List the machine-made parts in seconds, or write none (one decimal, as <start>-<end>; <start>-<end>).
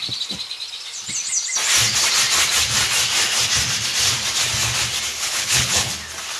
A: 5.1-5.9